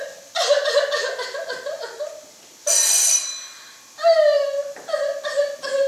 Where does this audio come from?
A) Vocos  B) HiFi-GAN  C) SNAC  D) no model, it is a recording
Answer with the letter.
D